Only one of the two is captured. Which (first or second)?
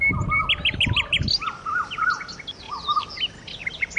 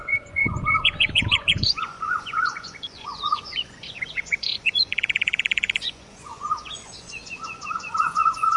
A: first